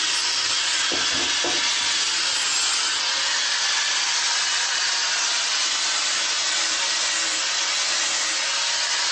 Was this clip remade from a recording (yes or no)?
no